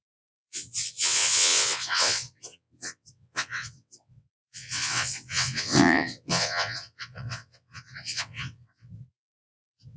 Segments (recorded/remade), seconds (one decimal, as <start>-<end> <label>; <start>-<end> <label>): 0.0-10.0 remade